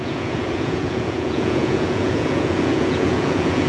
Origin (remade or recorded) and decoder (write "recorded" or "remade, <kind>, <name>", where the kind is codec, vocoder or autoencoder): remade, vocoder, Vocos